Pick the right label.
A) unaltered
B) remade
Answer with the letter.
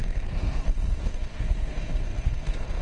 B